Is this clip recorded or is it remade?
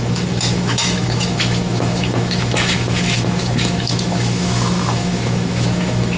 remade